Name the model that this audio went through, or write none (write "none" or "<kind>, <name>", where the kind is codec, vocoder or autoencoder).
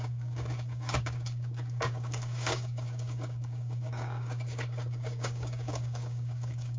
codec, DAC